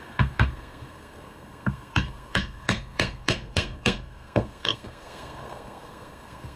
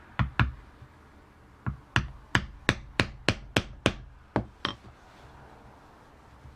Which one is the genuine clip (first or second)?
second